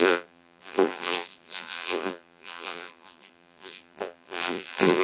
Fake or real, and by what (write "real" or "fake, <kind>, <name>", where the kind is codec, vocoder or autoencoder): fake, vocoder, BigVGAN v2